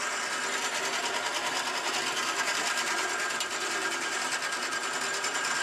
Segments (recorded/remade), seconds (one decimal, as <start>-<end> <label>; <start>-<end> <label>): 0.0-3.0 recorded; 3.0-4.2 remade; 4.2-5.6 recorded